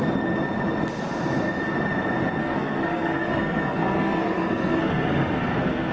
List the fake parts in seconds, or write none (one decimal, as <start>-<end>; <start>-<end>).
2.4-5.9